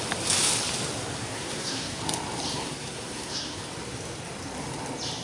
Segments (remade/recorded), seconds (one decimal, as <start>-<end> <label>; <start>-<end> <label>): 0.0-1.2 recorded; 1.2-2.0 remade; 2.0-2.5 recorded; 2.5-3.6 remade; 3.6-5.2 recorded